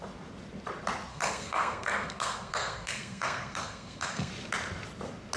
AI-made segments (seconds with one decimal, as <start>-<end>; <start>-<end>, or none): 1.1-4.3